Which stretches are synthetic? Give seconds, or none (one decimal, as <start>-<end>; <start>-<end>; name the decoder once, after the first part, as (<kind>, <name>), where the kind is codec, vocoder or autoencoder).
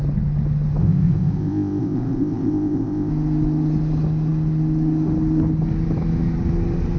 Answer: 0.8-3.1 (codec, ZipCodec)